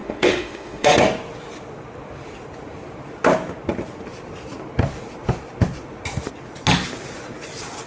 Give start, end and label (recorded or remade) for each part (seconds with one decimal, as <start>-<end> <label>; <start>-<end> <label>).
0.0-1.0 remade; 1.0-7.9 recorded